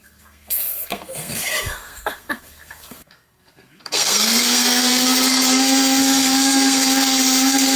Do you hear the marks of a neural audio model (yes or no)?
yes